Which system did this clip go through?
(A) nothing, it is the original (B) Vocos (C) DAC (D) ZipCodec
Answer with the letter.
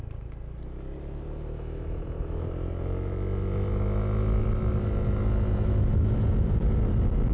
A